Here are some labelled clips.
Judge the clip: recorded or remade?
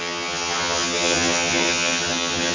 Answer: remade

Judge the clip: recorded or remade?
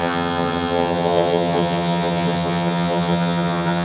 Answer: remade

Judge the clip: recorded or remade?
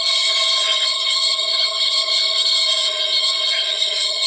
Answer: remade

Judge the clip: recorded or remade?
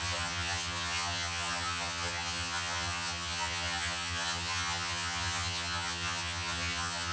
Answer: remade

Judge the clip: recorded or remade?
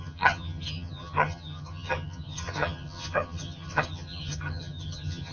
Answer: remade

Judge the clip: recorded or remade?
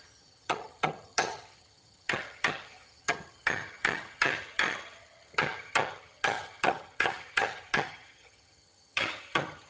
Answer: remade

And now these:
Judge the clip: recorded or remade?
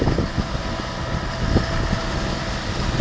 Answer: recorded